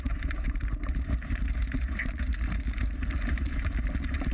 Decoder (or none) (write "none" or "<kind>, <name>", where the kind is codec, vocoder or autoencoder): vocoder, BigVGAN v2